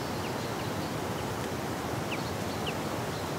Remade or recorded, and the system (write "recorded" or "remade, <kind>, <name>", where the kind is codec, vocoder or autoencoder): recorded